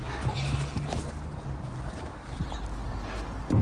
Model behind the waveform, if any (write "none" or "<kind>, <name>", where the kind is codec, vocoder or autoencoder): none